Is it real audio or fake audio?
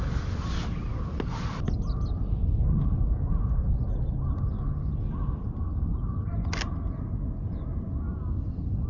real